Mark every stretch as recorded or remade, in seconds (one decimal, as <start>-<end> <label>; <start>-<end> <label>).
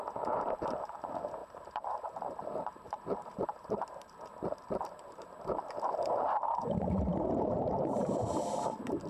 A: 0.0-1.4 recorded; 1.4-5.7 remade; 5.7-9.1 recorded